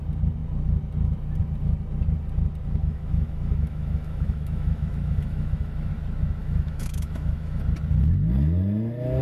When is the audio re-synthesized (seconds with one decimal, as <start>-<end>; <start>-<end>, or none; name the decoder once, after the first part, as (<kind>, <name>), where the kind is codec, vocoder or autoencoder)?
2.8-5.9 (autoencoder, DAC-VAE); 6.4-7.6

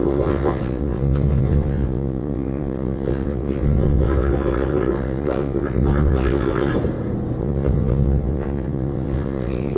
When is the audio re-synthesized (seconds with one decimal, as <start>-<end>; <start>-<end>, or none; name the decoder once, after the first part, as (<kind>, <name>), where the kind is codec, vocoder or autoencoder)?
0.0-6.7 (vocoder, WaveNeXt); 7.4-9.8

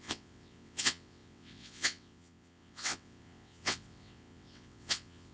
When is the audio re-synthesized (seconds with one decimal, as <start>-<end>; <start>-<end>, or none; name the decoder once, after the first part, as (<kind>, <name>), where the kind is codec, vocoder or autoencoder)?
0.0-5.3 (vocoder, WaveNeXt)